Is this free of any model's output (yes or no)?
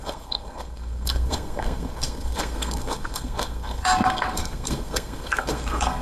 no